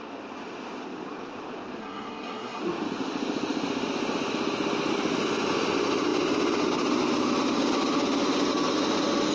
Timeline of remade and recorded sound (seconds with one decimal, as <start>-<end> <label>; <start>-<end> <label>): 0.0-1.8 recorded; 1.8-2.6 remade; 2.6-9.3 recorded